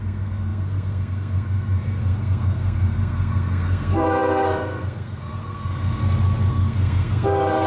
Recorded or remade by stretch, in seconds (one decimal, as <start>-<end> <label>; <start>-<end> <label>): 0.0-6.0 remade; 6.0-6.5 recorded; 6.5-7.7 remade